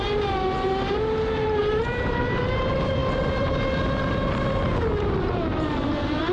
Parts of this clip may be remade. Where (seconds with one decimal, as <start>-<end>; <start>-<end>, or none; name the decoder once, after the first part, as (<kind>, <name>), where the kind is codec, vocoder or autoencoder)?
1.6-2.2 (vocoder, BigVGAN v2)